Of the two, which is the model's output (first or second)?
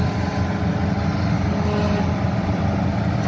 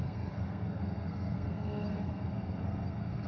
second